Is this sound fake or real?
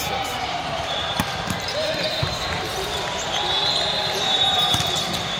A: real